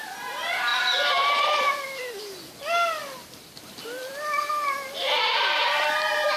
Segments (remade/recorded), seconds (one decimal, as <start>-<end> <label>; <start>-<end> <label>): 0.0-0.7 recorded; 0.7-2.1 remade; 2.1-3.0 recorded; 3.0-5.1 remade; 5.1-6.4 recorded